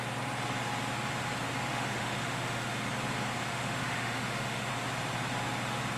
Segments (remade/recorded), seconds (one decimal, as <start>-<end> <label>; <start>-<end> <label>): 0.0-1.7 recorded; 1.7-2.9 remade; 2.9-3.5 recorded; 3.5-4.7 remade; 4.7-6.0 recorded